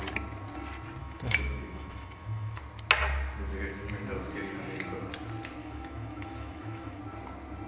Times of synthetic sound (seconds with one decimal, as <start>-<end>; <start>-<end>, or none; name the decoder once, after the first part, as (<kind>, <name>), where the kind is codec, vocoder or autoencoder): 1.0-2.6 (autoencoder, DAC-VAE); 5.6-7.0